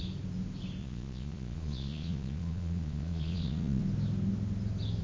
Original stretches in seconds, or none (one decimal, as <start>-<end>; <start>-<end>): 0.0-0.8; 3.8-5.0